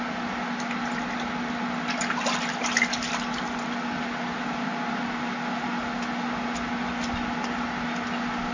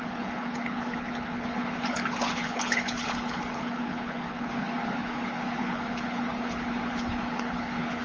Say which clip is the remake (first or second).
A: second